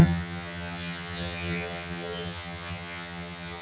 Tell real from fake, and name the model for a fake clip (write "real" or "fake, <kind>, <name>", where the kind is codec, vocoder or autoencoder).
fake, vocoder, HiFi-GAN